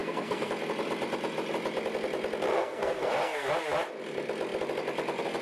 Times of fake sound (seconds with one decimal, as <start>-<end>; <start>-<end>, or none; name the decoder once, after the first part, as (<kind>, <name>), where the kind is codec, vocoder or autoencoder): 0.0-0.5 (codec, SNAC); 2.5-3.5